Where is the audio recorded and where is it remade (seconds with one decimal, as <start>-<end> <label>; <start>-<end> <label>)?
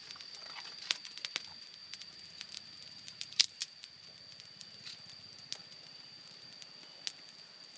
0.0-1.8 recorded; 1.8-3.5 remade; 3.5-5.6 recorded; 5.6-6.6 remade; 6.6-7.8 recorded